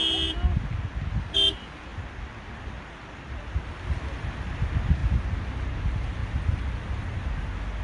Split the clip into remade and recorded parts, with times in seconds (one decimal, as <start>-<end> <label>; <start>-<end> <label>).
0.0-7.8 recorded